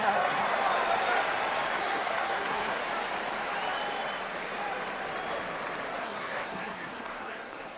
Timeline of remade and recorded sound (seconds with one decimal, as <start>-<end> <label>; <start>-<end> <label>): 0.0-0.4 remade; 0.4-1.8 recorded; 1.8-2.8 remade; 2.8-6.0 recorded; 6.0-7.8 remade